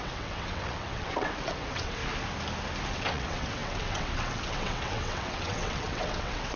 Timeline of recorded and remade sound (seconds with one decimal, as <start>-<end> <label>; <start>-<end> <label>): 0.0-2.0 remade; 2.0-2.9 recorded; 2.9-6.6 remade